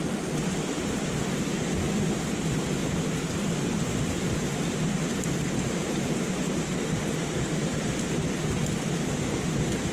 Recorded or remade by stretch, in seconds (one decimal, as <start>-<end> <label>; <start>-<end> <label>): 0.0-2.8 recorded; 2.8-6.6 remade; 6.6-9.9 recorded